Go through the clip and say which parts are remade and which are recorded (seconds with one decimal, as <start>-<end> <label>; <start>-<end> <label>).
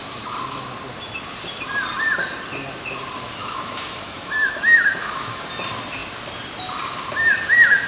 0.0-3.4 recorded; 3.4-5.5 remade; 5.5-7.9 recorded